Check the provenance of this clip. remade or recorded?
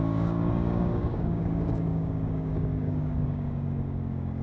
remade